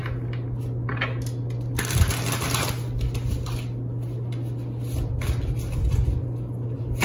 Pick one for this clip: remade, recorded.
recorded